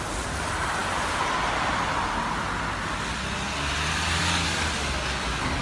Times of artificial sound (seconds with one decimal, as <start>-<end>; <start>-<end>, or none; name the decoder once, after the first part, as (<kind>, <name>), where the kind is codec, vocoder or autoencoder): none